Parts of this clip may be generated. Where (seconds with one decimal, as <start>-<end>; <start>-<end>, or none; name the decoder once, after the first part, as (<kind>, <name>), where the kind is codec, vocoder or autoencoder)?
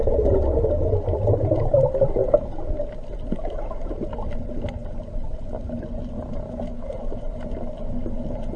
none